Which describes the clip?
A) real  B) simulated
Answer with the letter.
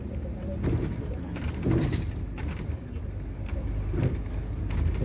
A